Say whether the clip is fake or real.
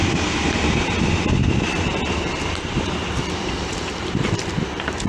fake